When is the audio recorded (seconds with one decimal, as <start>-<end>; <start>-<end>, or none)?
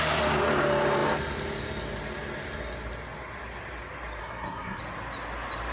0.0-4.2; 4.8-5.7